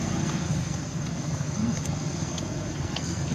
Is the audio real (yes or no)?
no